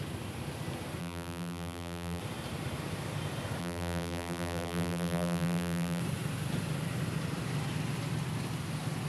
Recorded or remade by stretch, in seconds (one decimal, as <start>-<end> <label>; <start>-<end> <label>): 0.0-1.0 recorded; 1.0-2.2 remade; 2.2-3.6 recorded; 3.6-6.0 remade; 6.0-9.1 recorded